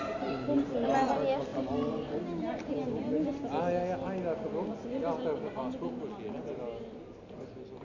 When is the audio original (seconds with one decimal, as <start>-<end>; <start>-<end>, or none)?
0.0-7.8

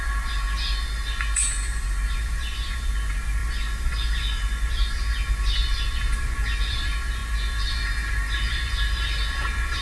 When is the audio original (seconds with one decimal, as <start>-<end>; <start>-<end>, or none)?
none

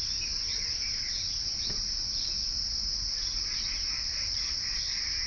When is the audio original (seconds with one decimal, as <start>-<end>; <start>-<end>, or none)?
0.0-0.5; 1.6-5.3